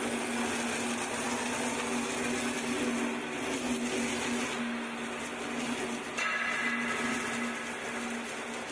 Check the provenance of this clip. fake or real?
real